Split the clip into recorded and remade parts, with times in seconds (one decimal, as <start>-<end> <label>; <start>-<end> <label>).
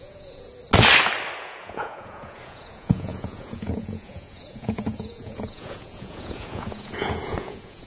0.0-0.5 remade; 0.5-1.4 recorded; 1.4-7.9 remade